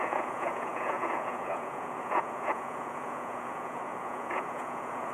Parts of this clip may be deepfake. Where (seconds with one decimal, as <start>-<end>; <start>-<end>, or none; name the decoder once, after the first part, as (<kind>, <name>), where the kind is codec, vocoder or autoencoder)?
0.0-5.1 (vocoder, Vocos)